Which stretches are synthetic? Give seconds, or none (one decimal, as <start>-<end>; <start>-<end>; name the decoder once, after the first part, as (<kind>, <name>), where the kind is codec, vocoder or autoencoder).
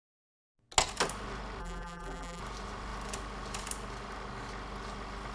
1.6-2.4 (vocoder, BigVGAN v2)